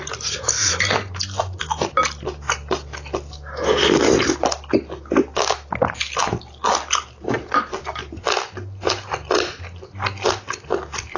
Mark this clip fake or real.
real